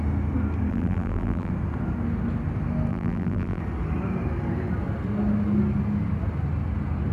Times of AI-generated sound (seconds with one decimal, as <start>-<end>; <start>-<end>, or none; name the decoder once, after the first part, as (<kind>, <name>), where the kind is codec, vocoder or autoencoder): 0.7-1.5 (vocoder, BigVGAN v2); 2.9-3.6